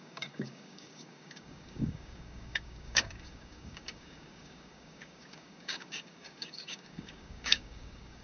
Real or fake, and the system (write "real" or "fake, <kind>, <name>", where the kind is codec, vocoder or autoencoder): fake, codec, DAC